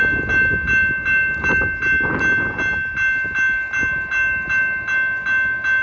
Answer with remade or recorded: recorded